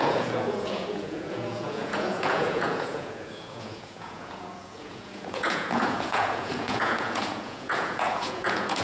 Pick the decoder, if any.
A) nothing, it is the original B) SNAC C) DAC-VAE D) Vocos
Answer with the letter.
D